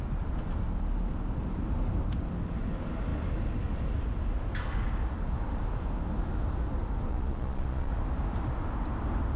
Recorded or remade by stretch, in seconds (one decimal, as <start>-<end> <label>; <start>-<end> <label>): 0.0-7.1 recorded; 7.1-7.9 remade; 7.9-9.4 recorded